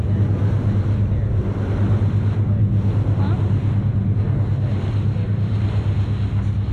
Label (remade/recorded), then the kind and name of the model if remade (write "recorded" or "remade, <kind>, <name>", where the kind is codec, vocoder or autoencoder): recorded